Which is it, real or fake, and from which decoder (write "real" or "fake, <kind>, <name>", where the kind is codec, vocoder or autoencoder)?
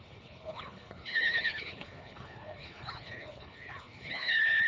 fake, codec, HILCodec